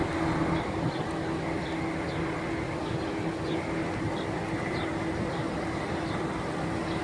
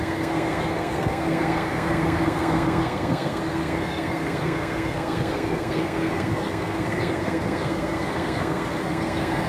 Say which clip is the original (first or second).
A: first